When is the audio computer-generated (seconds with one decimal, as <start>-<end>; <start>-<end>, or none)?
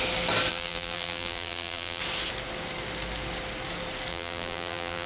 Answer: 0.5-2.0; 4.1-5.1